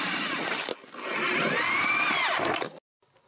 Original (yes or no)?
yes